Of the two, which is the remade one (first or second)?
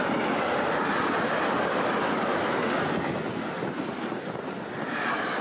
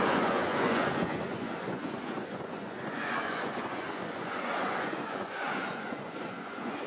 second